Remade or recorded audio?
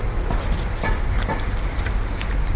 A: recorded